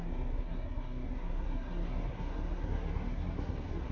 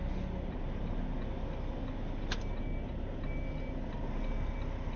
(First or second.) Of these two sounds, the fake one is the first